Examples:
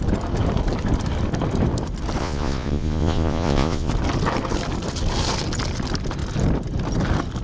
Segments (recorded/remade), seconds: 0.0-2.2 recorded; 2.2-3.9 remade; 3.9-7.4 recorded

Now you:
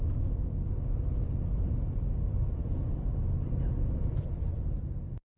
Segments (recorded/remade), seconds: 0.0-2.0 recorded; 2.0-5.4 remade

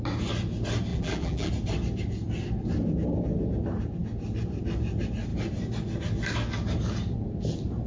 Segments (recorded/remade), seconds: 0.0-0.9 recorded; 0.9-1.5 remade; 1.5-7.9 recorded

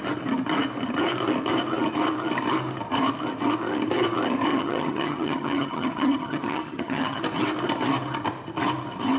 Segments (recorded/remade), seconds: 0.0-4.5 recorded; 4.5-7.2 remade; 7.2-9.2 recorded

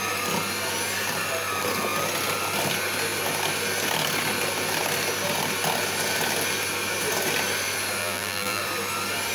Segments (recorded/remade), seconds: 0.0-8.0 recorded; 8.0-8.6 remade; 8.6-9.3 recorded

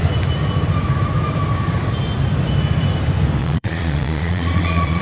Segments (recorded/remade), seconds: 0.0-3.4 recorded; 3.4-5.0 remade

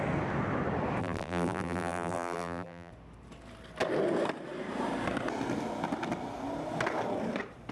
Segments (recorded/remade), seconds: 0.0-1.0 recorded; 1.0-2.9 remade; 2.9-7.7 recorded